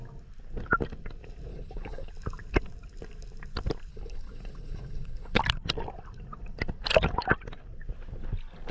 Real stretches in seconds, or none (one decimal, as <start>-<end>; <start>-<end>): 0.0-1.5; 2.1-3.9; 5.4-8.7